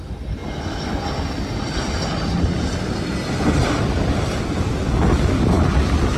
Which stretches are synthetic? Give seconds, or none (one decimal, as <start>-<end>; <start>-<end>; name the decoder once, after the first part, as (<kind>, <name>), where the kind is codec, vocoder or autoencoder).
none